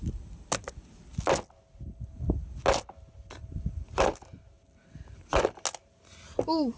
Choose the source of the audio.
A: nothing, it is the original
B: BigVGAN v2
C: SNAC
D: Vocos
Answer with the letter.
A